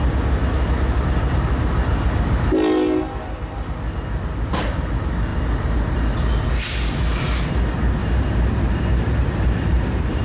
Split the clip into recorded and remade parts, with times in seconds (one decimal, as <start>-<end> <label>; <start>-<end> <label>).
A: 0.0-8.0 recorded; 8.0-10.2 remade